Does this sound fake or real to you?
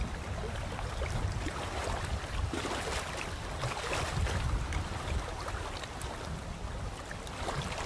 fake